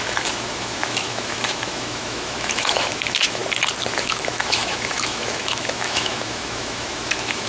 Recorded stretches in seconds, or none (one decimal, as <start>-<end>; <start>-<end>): 3.4-3.9